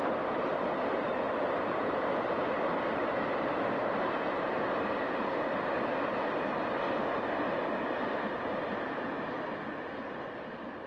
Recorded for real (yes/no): yes